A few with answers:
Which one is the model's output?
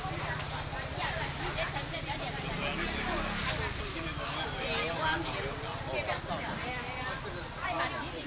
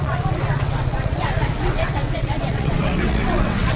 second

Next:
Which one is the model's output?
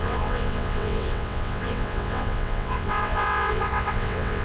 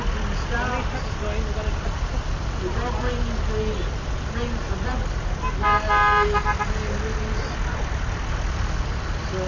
first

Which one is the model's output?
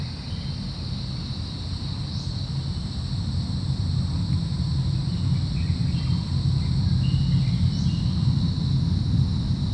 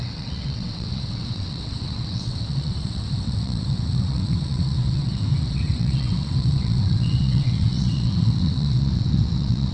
second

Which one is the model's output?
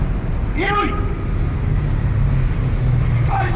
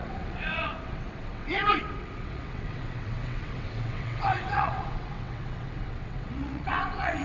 second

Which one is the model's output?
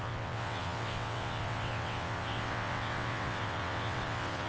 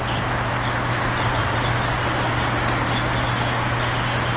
first